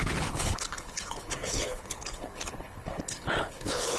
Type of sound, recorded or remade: remade